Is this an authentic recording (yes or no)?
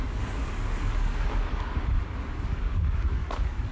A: no